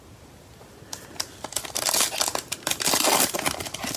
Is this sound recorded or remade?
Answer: recorded